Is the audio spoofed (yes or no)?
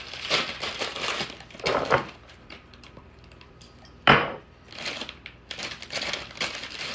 yes